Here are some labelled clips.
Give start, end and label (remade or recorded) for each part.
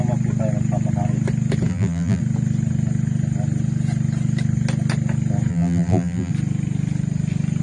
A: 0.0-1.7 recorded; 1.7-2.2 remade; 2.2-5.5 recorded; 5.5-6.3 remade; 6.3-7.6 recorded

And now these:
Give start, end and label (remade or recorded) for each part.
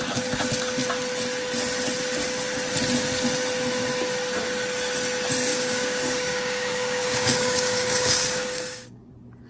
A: 0.0-5.5 recorded; 5.5-9.1 remade; 9.1-9.5 recorded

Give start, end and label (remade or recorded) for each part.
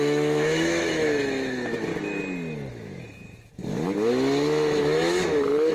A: 0.0-1.9 remade; 1.9-2.7 recorded; 2.7-3.6 remade; 3.6-4.8 recorded; 4.8-5.7 remade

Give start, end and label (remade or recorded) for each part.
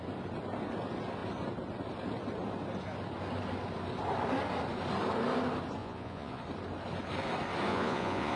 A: 0.0-5.8 recorded; 5.8-6.4 remade; 6.4-7.7 recorded; 7.7-8.4 remade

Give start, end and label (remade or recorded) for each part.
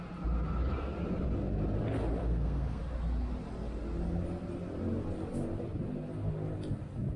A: 0.0-2.2 recorded; 2.2-2.8 remade; 2.8-7.2 recorded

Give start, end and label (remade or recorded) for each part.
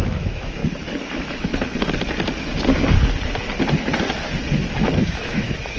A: 0.0-0.6 remade; 0.6-1.1 recorded; 1.1-1.5 remade; 1.5-5.0 recorded; 5.0-5.8 remade